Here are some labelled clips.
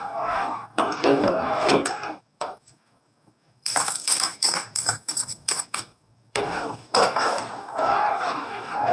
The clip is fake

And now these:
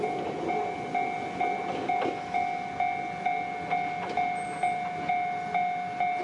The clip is real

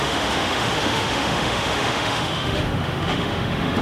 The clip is fake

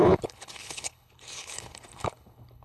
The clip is fake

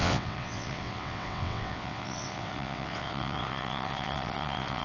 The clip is fake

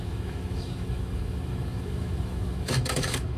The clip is fake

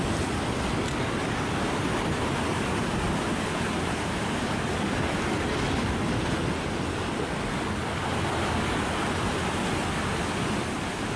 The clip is real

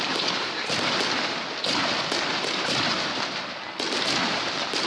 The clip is real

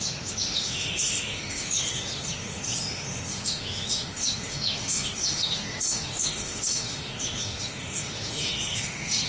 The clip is fake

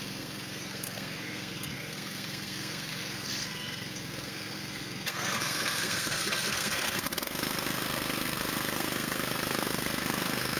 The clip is fake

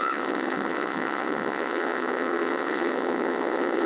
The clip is fake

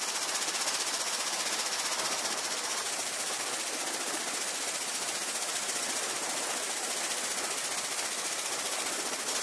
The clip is real